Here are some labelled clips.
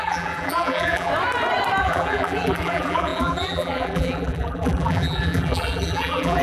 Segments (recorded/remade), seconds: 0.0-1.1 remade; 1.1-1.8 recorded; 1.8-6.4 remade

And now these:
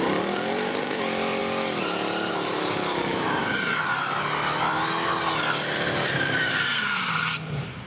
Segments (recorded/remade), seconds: 0.0-1.4 remade; 1.4-2.3 recorded; 2.3-3.4 remade; 3.4-5.4 recorded; 5.4-7.9 remade

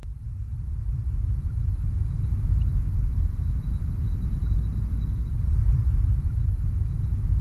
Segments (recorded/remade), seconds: 0.0-7.4 recorded

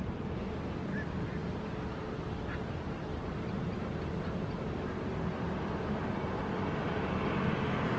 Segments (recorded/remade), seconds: 0.0-3.1 recorded; 3.1-3.7 remade; 3.7-6.8 recorded; 6.8-7.4 remade; 7.4-8.0 recorded

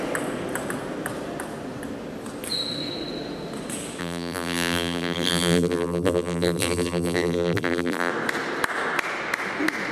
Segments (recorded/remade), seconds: 0.0-4.0 recorded; 4.0-8.1 remade; 8.1-9.9 recorded

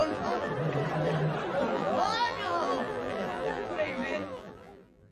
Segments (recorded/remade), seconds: 0.0-0.5 remade; 0.5-1.7 recorded; 1.7-5.1 remade

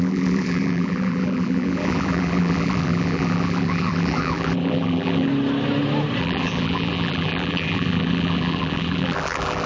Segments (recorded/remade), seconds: 0.0-5.3 remade; 5.3-6.2 recorded; 6.2-9.7 remade

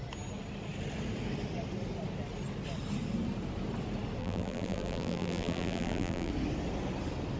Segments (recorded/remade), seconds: 0.0-4.2 recorded; 4.2-6.3 remade; 6.3-7.4 recorded